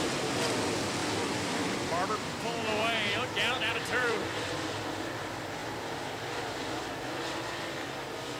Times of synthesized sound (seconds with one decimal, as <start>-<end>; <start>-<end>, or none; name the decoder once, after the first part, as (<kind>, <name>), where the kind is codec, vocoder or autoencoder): 1.0-4.8 (vocoder, BigVGAN v2)

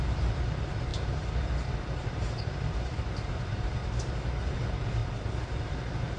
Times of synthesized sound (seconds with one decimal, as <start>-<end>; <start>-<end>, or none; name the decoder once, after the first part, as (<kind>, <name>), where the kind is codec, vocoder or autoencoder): 0.0-3.8 (vocoder, BigVGAN v2); 4.4-5.0; 5.6-6.2

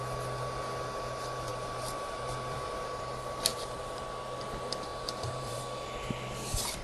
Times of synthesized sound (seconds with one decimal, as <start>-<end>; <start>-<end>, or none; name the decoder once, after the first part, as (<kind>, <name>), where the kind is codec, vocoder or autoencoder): 1.5-2.2 (vocoder, BigVGAN v2); 3.5-4.0; 4.9-5.6

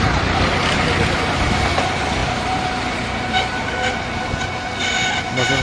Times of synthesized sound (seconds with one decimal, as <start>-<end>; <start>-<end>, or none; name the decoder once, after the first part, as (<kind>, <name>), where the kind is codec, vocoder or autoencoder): 2.2-2.7 (vocoder, BigVGAN v2)

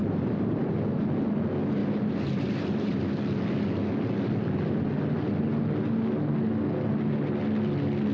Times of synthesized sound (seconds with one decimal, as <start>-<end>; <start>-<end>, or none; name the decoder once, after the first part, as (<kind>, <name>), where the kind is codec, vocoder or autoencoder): 0.0-1.0 (vocoder, BigVGAN v2); 1.8-3.2

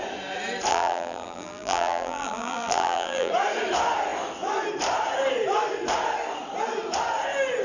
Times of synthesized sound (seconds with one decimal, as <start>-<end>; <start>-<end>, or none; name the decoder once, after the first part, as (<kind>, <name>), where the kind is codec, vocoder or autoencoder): 0.7-3.3 (vocoder, BigVGAN v2)

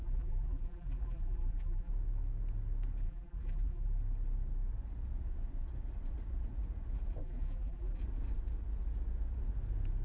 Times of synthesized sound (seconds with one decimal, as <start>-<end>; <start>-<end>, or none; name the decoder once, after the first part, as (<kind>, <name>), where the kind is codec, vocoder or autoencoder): 0.0-1.9 (vocoder, BigVGAN v2); 3.0-4.0; 7.2-8.0